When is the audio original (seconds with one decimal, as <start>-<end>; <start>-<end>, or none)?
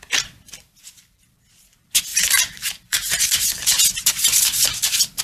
0.0-2.1